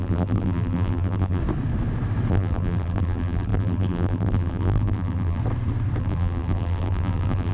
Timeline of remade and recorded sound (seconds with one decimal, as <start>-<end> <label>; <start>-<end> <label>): 0.0-1.4 remade; 1.4-2.3 recorded; 2.3-5.4 remade; 5.4-6.0 recorded; 6.0-7.5 remade